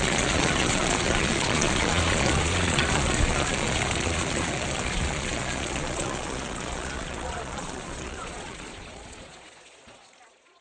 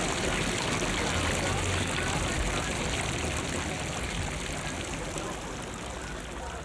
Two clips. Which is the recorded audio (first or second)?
second